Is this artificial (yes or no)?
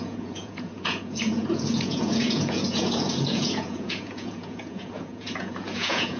yes